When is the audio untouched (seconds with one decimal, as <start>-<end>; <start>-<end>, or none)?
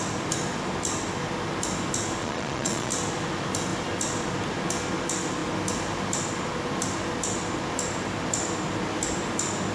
0.0-2.2; 2.9-9.7